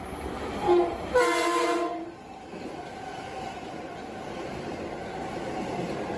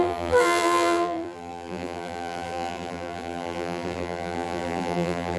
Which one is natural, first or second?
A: first